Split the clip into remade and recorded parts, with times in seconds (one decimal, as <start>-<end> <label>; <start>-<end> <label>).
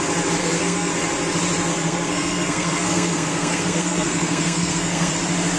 0.0-0.4 recorded; 0.4-0.9 remade; 0.9-1.7 recorded; 1.7-5.1 remade; 5.1-5.6 recorded